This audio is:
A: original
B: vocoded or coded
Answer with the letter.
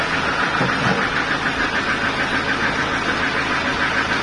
A